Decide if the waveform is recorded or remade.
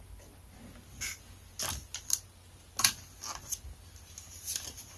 recorded